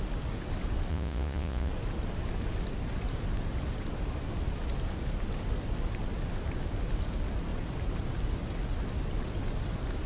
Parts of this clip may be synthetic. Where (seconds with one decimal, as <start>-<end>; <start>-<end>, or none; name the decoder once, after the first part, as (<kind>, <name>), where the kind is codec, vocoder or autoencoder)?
0.9-1.7 (vocoder, Vocos)